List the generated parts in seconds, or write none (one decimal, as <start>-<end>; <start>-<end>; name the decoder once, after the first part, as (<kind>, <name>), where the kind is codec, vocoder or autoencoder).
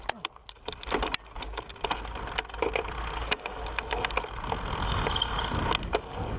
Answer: none